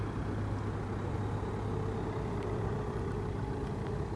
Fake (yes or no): no